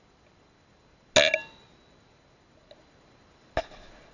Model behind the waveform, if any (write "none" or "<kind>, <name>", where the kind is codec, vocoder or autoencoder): none